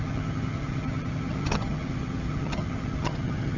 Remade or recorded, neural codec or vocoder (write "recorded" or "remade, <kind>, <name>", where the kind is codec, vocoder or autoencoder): remade, vocoder, HiFi-GAN